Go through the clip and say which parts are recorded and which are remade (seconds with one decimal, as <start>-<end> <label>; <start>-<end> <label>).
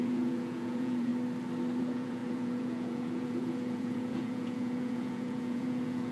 0.0-1.1 remade; 1.1-1.8 recorded; 1.8-6.1 remade